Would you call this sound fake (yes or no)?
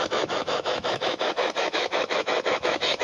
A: yes